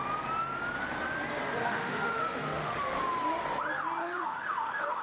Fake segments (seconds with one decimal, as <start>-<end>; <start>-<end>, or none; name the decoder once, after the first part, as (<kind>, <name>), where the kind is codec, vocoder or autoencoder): 1.6-3.0 (autoencoder, DAC-VAE); 4.0-5.0